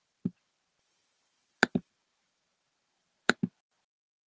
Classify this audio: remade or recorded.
remade